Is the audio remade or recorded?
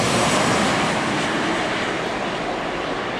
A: recorded